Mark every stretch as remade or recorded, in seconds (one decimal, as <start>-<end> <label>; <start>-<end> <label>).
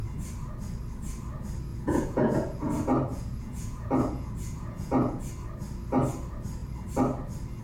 0.0-1.7 recorded; 1.7-2.7 remade; 2.7-3.1 recorded; 3.1-5.3 remade; 5.3-7.6 recorded